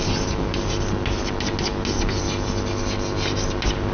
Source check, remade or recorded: recorded